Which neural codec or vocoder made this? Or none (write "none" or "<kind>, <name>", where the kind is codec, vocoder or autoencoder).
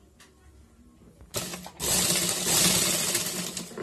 none